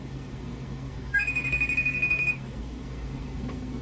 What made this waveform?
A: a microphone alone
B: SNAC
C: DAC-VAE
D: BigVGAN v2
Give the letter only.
B